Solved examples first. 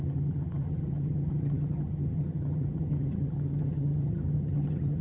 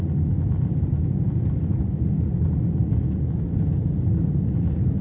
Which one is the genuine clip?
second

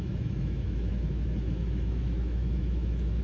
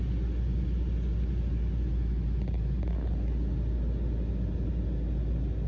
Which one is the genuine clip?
second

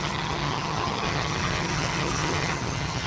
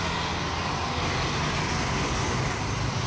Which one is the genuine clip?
second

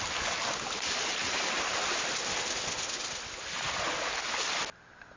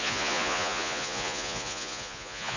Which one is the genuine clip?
first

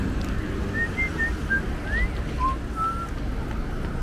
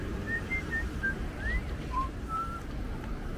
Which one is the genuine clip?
first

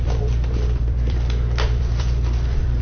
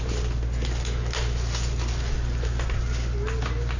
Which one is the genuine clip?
second